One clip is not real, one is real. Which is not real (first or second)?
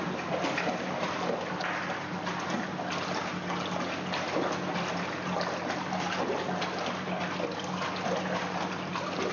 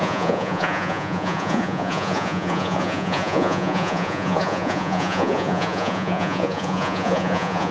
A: second